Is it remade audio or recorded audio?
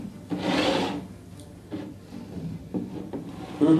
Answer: remade